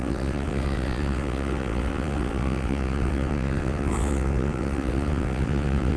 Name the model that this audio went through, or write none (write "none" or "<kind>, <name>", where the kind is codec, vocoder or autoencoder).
vocoder, WaveNeXt